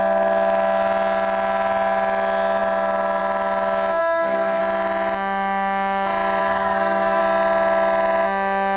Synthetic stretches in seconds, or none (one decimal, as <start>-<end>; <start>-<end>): 4.0-4.6; 6.4-7.2